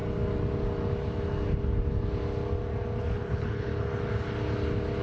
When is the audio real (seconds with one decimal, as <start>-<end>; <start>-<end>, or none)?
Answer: 0.0-3.0; 3.7-5.0